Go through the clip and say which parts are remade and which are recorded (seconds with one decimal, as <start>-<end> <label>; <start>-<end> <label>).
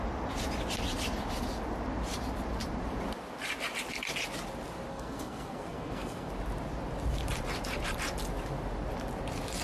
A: 0.0-4.9 recorded; 4.9-6.3 remade; 6.3-9.6 recorded